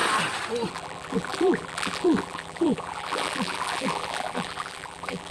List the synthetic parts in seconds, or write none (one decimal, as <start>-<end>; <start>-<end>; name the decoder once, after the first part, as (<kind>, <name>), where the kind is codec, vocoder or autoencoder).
0.7-5.3 (vocoder, BigVGAN v2)